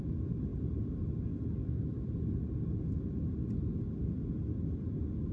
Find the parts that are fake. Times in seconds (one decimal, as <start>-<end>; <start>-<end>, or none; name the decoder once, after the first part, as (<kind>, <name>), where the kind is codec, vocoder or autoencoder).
none